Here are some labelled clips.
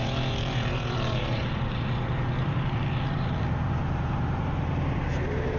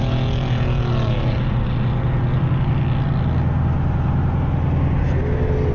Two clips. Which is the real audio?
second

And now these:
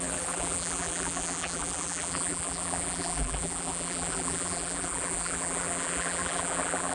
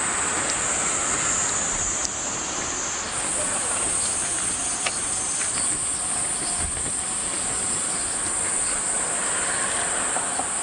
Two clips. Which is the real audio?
second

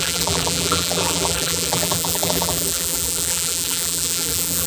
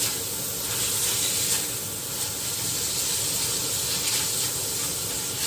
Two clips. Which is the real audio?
second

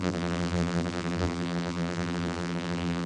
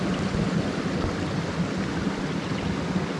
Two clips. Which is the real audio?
second